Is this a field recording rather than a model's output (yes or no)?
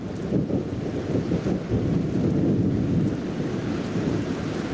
yes